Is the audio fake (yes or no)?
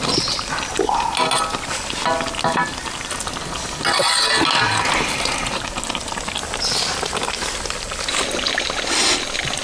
no